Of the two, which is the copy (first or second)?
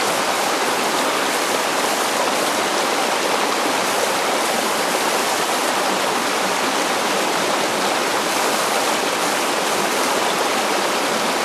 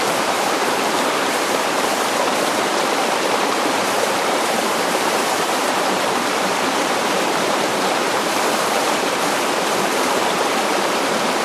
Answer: second